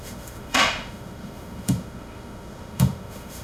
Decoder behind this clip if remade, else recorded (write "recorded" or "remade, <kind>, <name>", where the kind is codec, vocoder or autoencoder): remade, autoencoder, DAC-VAE